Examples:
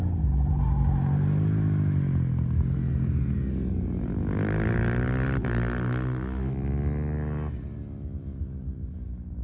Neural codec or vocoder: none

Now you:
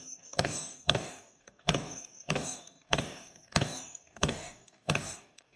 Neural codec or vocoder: codec, DAC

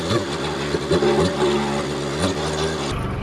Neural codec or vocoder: none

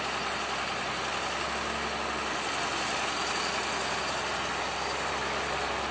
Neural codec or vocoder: none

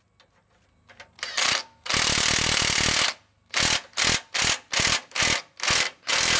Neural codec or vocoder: none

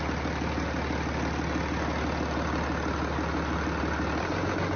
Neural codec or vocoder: none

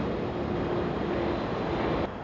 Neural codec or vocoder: none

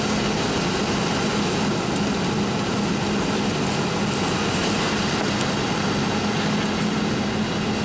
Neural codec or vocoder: none